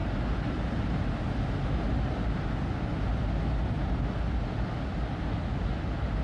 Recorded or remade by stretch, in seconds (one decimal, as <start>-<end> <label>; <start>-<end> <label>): 0.0-6.2 recorded